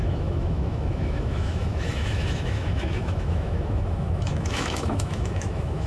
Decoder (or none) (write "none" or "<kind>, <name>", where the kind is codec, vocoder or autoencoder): autoencoder, DAC-VAE